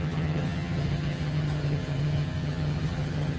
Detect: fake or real fake